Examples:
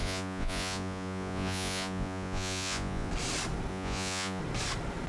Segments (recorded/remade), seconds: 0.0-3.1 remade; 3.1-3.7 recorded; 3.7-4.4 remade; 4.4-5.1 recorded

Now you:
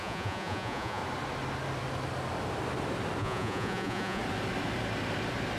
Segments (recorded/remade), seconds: 0.0-1.0 remade; 1.0-3.2 recorded; 3.2-4.2 remade; 4.2-5.6 recorded

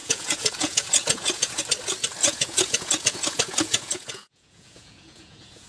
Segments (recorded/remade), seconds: 0.0-1.6 remade; 1.6-2.2 recorded; 2.2-5.7 remade